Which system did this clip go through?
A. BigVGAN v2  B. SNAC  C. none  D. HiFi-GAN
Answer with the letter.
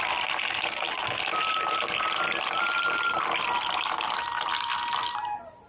A